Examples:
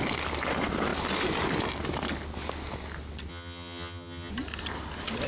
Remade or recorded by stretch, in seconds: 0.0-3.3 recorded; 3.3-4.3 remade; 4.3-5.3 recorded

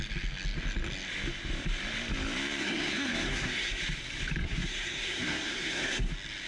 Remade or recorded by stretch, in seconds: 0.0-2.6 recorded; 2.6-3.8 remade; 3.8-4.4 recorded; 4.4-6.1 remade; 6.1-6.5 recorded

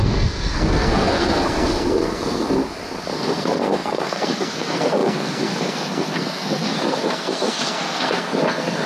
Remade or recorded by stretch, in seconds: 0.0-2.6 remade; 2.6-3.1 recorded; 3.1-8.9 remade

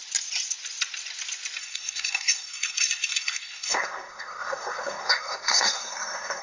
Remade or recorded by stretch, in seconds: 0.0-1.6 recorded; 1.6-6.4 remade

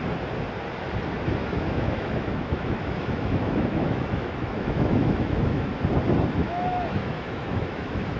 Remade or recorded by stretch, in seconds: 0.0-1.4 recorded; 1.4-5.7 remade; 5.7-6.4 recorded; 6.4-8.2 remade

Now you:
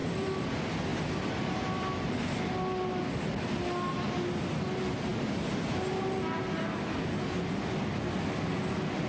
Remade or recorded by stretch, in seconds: 0.0-0.5 remade; 0.5-0.9 recorded; 0.9-2.2 remade; 2.2-9.1 recorded